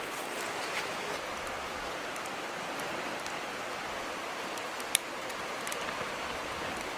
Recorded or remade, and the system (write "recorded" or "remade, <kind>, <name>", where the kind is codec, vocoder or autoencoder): recorded